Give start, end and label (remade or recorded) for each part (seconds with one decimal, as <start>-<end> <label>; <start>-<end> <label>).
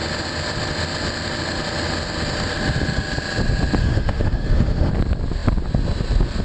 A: 0.0-3.8 recorded; 3.8-4.9 remade; 4.9-6.4 recorded